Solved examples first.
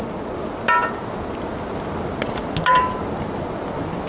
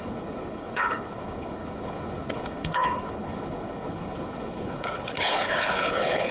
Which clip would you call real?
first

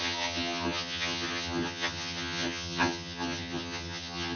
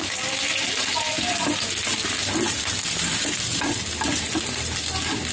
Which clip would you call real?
second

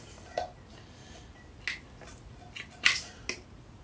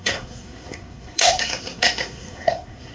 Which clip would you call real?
first